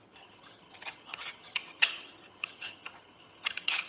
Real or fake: fake